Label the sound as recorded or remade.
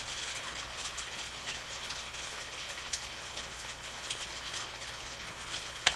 remade